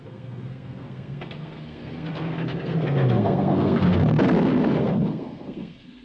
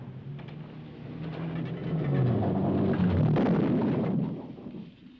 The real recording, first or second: second